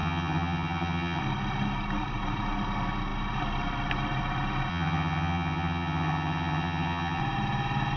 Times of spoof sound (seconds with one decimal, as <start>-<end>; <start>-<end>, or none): 0.0-1.2; 4.7-7.2